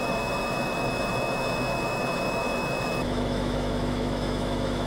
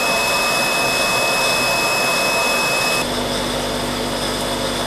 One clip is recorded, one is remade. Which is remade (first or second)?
first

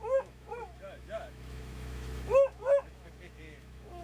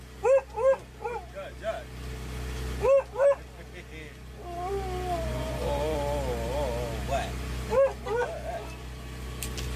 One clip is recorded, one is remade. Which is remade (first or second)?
first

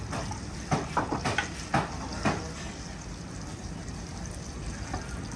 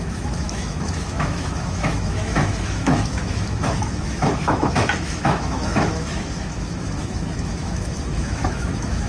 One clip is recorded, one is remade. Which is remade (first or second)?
second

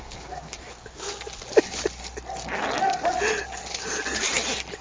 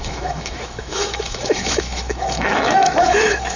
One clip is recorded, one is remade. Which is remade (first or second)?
second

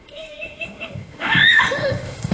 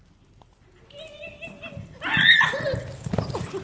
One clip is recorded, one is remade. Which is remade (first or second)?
first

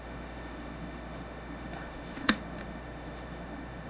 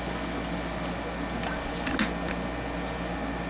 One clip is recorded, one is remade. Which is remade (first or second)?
first